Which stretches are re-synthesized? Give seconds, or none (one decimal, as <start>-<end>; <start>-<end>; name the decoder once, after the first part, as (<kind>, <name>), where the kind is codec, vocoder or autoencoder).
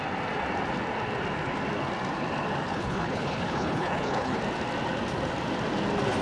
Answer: 2.7-4.4 (codec, HILCodec)